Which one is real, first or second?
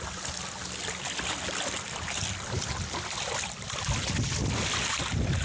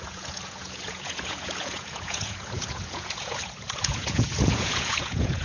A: first